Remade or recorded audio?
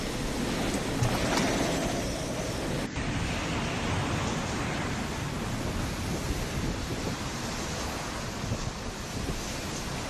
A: recorded